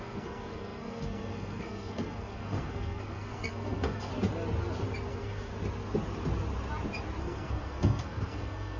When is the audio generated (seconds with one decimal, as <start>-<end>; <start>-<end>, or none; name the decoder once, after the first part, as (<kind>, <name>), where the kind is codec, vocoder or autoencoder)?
0.0-4.1 (codec, SNAC); 5.1-5.5; 7.2-8.8